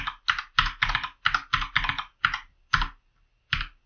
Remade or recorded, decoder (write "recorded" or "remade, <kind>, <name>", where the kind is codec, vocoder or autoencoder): recorded